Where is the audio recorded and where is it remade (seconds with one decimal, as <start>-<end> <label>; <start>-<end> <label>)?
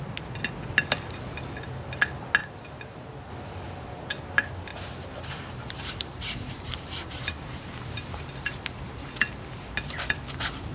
0.0-2.4 recorded; 2.4-3.3 remade; 3.3-4.7 recorded; 4.7-8.2 remade; 8.2-10.7 recorded